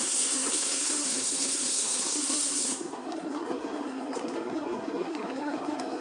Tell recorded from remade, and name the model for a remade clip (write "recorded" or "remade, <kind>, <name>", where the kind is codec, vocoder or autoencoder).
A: remade, codec, SNAC